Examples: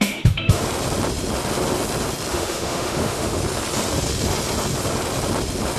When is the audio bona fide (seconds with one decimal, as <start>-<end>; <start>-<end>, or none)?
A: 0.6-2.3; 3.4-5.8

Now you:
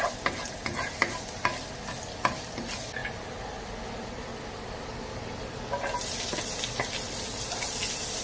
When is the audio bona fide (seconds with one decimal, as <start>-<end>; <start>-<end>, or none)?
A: 0.0-8.2

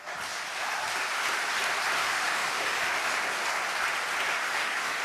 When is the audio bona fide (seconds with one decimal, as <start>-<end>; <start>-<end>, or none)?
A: 0.0-2.0; 3.1-4.3